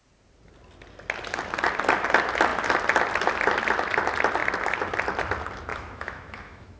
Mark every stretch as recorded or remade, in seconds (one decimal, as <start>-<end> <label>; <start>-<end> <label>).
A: 0.0-5.7 recorded; 5.7-6.8 remade